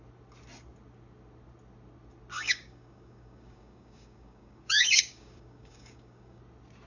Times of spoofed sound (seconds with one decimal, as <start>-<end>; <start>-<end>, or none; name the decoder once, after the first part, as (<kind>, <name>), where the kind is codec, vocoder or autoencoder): 2.3-6.4 (codec, DAC)